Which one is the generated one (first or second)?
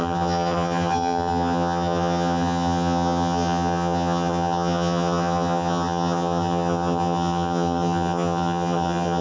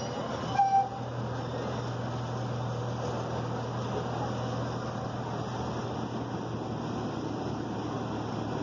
first